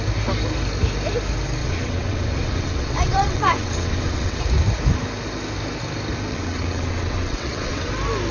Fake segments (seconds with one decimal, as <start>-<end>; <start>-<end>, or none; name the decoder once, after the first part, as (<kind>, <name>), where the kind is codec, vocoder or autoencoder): 1.6-4.4 (vocoder, WaveNeXt); 6.3-7.9